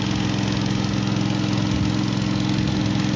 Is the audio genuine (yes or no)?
yes